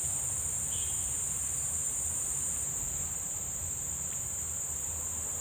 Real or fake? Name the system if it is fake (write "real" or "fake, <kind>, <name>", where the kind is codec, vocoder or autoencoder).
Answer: fake, vocoder, BigVGAN v2